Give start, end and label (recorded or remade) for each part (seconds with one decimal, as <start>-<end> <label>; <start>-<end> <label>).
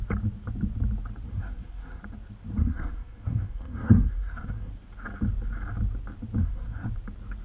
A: 0.0-1.3 recorded; 1.3-2.0 remade; 2.0-2.6 recorded; 2.6-4.7 remade; 4.7-6.4 recorded; 6.4-6.9 remade; 6.9-7.4 recorded